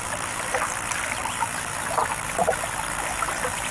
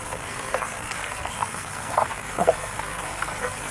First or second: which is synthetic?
second